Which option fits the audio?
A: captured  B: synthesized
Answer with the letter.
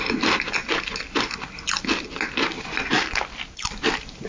A